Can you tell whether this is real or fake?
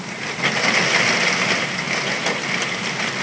real